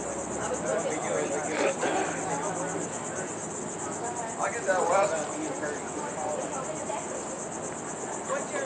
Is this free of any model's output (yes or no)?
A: yes